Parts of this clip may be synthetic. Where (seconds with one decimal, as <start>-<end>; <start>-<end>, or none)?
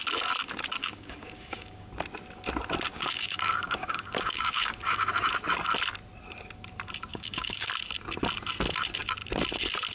0.8-1.9; 2.9-5.1; 7.1-7.7